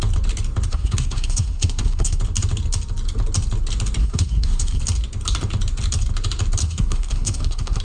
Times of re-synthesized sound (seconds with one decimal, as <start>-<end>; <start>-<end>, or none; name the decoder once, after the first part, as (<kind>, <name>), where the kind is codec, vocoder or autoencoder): 0.7-2.2 (codec, SNAC); 4.0-4.8; 6.6-7.8